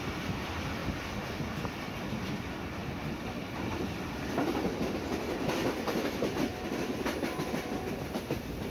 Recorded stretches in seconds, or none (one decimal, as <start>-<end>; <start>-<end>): 0.0-2.8; 4.9-6.5; 8.2-8.7